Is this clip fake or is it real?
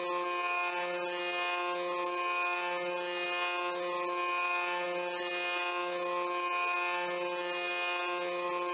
real